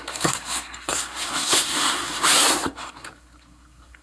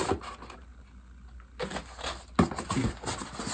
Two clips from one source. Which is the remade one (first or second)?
first